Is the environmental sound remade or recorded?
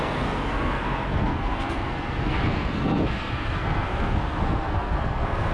remade